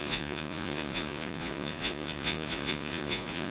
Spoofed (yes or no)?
yes